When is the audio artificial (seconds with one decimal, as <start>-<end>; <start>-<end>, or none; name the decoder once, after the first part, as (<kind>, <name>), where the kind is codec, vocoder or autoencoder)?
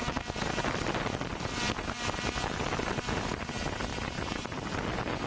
none